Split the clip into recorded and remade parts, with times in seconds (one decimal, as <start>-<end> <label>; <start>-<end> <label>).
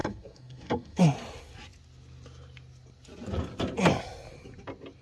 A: 0.0-1.0 remade; 1.0-5.0 recorded